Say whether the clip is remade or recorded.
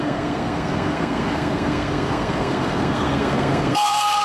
remade